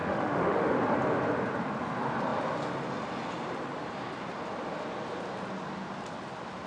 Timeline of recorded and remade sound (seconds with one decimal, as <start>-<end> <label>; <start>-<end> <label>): 0.0-0.8 remade; 0.8-6.7 recorded